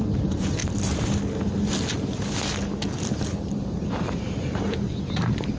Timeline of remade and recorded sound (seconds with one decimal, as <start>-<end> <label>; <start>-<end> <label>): 0.0-0.6 remade; 0.6-4.0 recorded; 4.0-5.6 remade